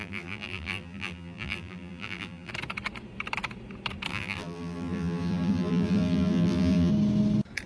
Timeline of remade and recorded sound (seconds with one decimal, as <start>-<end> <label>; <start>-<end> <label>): 0.0-2.5 remade; 2.5-4.1 recorded; 4.1-6.9 remade; 6.9-7.7 recorded